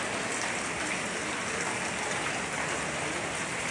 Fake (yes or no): no